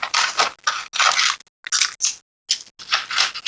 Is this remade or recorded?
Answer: recorded